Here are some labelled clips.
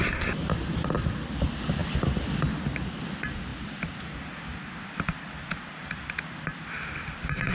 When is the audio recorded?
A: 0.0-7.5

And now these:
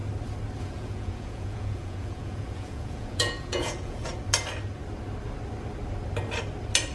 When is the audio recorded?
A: 0.0-0.6; 4.1-6.9

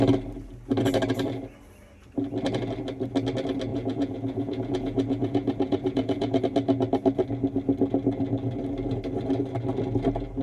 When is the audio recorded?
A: 0.0-3.7; 6.4-10.4

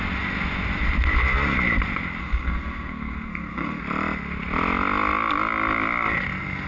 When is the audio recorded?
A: 0.0-2.2; 3.8-6.7

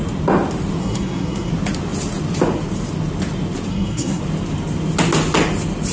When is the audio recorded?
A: 0.0-0.8; 1.5-3.7; 4.2-5.9

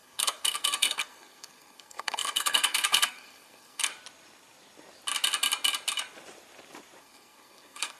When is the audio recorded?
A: 3.9-7.0